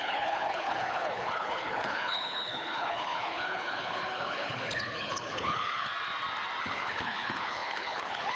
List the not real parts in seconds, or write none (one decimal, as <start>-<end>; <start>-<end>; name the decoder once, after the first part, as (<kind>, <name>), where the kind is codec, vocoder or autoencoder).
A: 0.0-5.9 (codec, HILCodec); 6.6-8.3